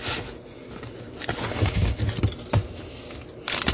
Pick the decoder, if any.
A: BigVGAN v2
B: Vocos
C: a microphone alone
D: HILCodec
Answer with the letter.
C